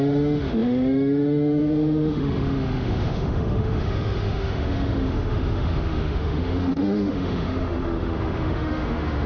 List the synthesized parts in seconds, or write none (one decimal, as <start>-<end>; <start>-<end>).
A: 0.0-9.3